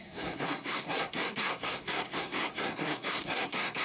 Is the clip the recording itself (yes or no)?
no